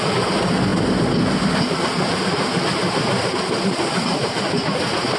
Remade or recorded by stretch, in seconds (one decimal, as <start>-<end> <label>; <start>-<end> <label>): 0.0-5.2 recorded